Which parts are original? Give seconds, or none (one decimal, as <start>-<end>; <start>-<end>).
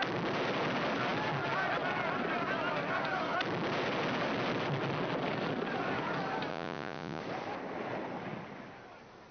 0.0-6.5; 7.2-9.3